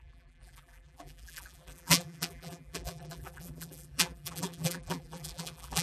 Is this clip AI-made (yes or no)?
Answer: yes